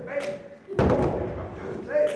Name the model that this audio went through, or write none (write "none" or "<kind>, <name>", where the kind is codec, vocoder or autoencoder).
none